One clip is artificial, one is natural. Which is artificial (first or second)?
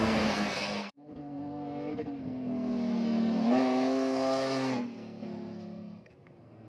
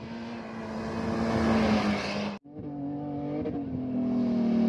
first